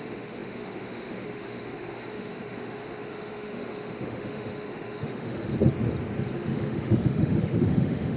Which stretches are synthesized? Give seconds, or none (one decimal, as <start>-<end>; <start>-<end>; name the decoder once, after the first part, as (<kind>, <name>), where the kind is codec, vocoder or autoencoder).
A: 0.0-5.5 (autoencoder, DAC-VAE); 6.3-8.2